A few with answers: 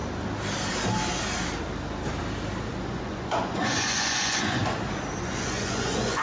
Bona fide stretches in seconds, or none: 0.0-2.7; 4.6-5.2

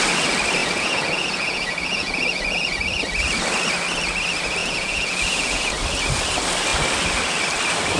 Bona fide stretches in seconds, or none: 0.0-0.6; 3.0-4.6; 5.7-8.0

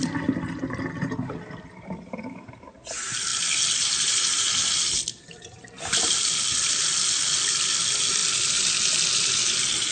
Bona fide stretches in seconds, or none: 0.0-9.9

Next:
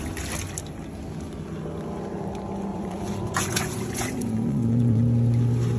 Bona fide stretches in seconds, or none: 0.0-2.7; 5.0-5.8

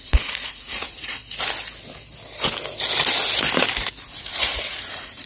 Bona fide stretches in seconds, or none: 1.2-4.3